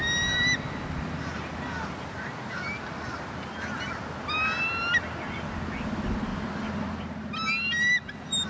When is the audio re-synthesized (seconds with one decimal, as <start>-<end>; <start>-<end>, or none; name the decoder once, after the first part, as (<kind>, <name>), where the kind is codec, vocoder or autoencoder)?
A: 6.3-7.2 (vocoder, BigVGAN v2)